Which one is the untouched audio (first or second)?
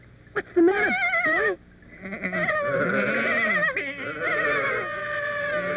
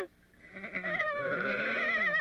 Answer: first